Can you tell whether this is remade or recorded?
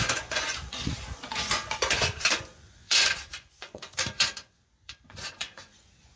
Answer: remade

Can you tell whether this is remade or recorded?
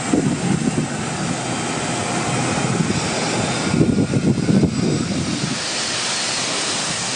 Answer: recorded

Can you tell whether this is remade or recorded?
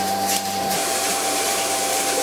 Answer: remade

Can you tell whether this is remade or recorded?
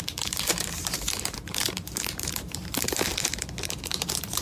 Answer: remade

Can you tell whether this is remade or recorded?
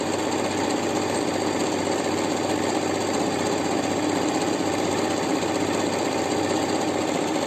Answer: recorded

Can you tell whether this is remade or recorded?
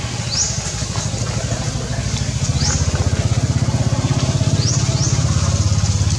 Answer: recorded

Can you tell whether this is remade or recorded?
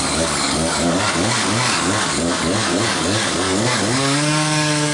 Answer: remade